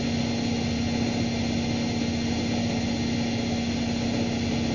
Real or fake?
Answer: real